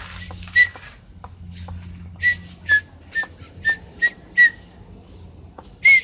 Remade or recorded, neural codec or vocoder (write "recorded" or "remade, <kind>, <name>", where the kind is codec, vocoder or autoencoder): recorded